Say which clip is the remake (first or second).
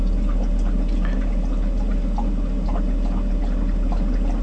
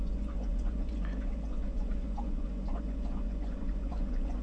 second